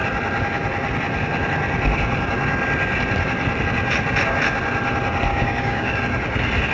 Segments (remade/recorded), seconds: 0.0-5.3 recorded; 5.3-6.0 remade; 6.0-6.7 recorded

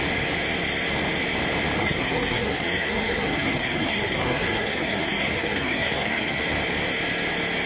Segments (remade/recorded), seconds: 0.0-1.8 recorded; 1.8-6.4 remade; 6.4-7.7 recorded

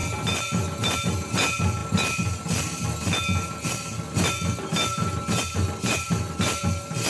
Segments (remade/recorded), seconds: 0.0-7.1 recorded

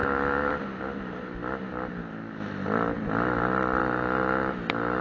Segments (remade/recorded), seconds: 0.0-0.5 remade; 0.5-3.8 recorded; 3.8-5.0 remade